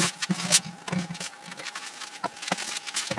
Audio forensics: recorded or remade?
recorded